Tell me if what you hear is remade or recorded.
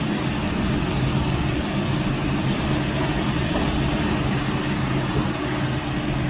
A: recorded